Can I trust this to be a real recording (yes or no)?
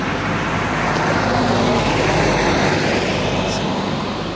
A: yes